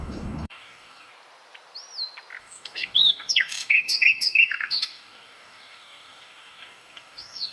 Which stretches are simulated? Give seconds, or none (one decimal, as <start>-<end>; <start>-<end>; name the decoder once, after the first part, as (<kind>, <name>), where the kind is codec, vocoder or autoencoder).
0.0-1.1 (codec, DAC); 2.4-7.5